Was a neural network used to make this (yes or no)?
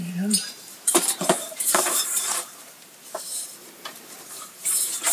yes